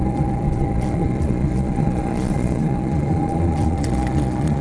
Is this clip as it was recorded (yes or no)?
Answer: no